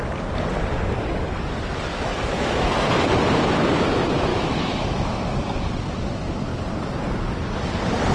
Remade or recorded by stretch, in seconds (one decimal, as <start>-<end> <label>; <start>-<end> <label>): 0.0-1.9 recorded; 1.9-2.9 remade; 2.9-4.3 recorded; 4.3-5.3 remade; 5.3-8.1 recorded